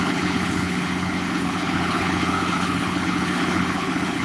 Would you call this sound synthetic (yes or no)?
yes